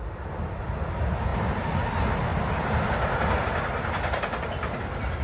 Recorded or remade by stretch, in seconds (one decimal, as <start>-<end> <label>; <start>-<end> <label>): 0.0-5.2 recorded